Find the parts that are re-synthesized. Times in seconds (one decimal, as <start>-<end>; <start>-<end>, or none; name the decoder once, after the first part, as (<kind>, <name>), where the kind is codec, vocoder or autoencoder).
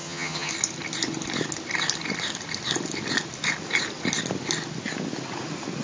0.0-0.5 (vocoder, HiFi-GAN)